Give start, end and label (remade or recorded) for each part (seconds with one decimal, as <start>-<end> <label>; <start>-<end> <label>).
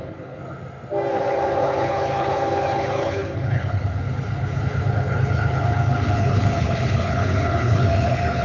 0.0-0.4 remade; 0.4-1.1 recorded; 1.1-8.4 remade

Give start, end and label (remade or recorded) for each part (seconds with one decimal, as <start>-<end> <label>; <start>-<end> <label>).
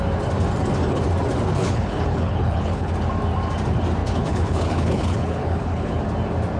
0.0-1.6 recorded; 1.6-2.9 remade; 2.9-4.0 recorded; 4.0-6.0 remade; 6.0-6.6 recorded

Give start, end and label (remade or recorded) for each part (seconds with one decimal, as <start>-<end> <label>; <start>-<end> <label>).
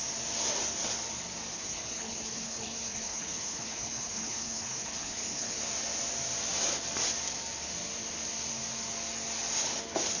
0.0-1.5 recorded; 1.5-5.6 remade; 5.6-10.2 recorded